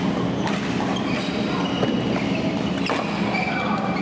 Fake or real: real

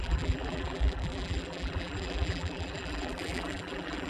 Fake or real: fake